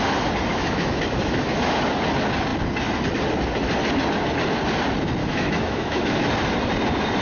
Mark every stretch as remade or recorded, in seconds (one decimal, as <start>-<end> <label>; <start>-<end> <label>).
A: 0.0-0.5 recorded; 0.5-1.9 remade; 1.9-5.2 recorded; 5.2-6.3 remade; 6.3-7.2 recorded

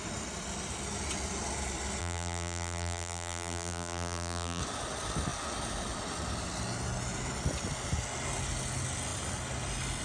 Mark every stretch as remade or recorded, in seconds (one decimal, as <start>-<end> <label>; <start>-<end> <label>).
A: 0.0-2.0 recorded; 2.0-4.6 remade; 4.6-10.0 recorded